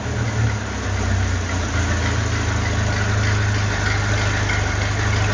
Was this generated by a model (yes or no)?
no